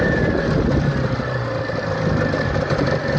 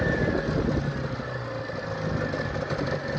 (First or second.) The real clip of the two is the second